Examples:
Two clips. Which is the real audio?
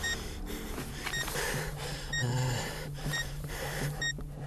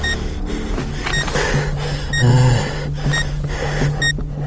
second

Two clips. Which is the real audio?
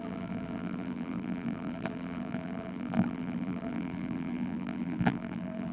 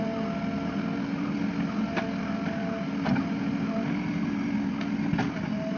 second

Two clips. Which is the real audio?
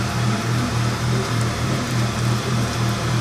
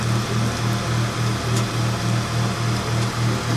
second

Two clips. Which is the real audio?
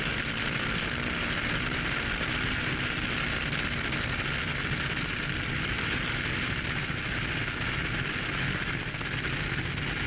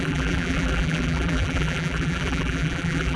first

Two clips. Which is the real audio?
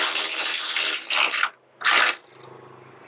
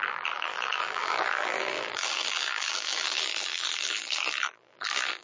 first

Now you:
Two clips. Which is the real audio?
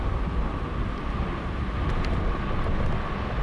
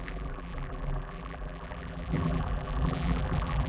first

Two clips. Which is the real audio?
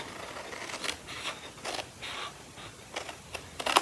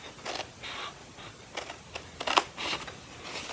second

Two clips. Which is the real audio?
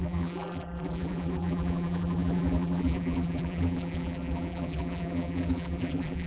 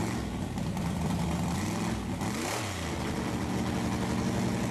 second